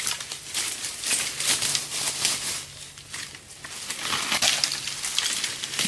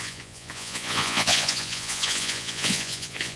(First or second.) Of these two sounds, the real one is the first